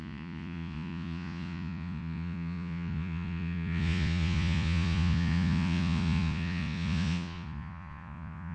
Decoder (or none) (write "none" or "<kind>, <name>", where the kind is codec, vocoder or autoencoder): vocoder, Vocos